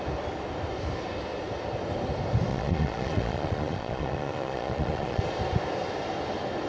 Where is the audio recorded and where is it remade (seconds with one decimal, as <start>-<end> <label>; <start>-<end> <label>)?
0.0-2.5 recorded; 2.5-5.2 remade; 5.2-6.7 recorded